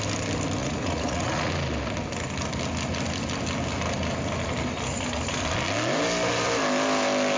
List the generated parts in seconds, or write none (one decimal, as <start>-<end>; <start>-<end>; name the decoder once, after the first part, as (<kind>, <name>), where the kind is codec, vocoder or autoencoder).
0.6-1.5 (vocoder, Vocos)